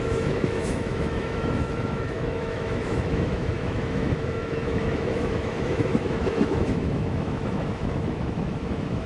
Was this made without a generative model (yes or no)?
no